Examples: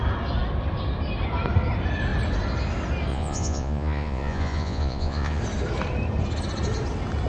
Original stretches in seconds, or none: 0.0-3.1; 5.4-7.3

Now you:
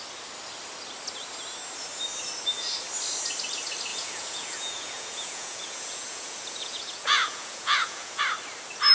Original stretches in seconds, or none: 0.0-3.9; 8.2-8.9

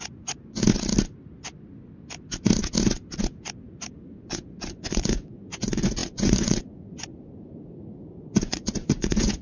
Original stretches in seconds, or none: 0.6-4.0; 7.1-8.1

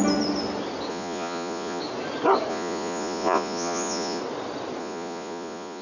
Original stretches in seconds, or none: 0.0-0.9; 1.8-2.5; 4.2-4.8

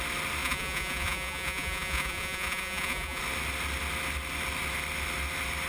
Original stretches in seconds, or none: 0.0-0.4; 3.2-5.7

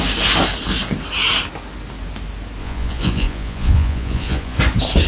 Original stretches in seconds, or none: 0.0-2.6; 4.6-5.1

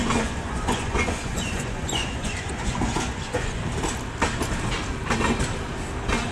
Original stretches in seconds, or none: 3.6-6.3